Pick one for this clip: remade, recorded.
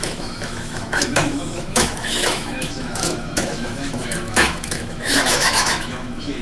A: remade